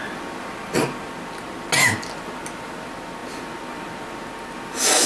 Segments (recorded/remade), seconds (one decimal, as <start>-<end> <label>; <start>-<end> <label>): 0.0-5.1 recorded